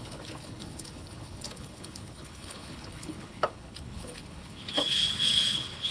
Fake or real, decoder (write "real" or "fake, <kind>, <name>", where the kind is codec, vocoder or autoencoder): fake, codec, HILCodec